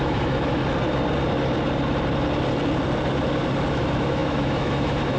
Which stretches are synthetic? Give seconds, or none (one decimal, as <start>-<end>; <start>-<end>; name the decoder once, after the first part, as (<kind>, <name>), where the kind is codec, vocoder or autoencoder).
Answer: 0.0-0.6 (autoencoder, DAC-VAE); 3.7-5.2